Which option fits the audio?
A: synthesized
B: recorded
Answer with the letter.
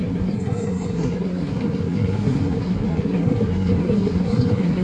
A